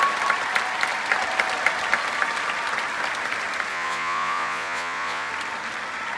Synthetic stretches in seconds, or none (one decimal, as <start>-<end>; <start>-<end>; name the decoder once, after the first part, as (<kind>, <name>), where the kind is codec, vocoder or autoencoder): 3.7-5.3 (vocoder, Vocos)